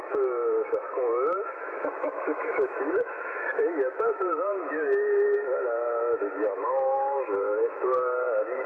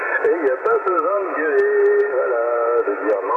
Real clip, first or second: second